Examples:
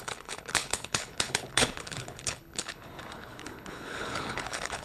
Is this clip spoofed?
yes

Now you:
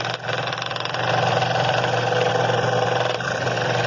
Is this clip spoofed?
no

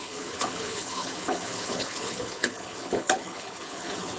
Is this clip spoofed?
yes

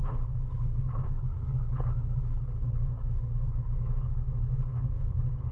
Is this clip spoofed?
yes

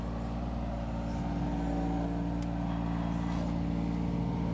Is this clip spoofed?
no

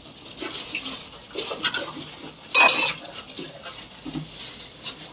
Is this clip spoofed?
no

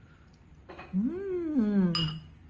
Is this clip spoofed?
no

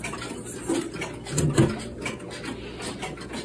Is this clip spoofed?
no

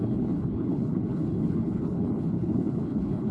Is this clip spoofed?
yes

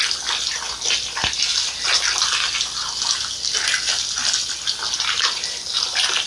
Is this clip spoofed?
no